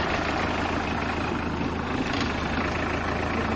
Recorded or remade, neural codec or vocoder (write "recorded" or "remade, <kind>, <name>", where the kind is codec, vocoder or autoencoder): recorded